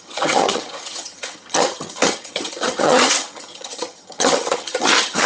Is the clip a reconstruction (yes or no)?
yes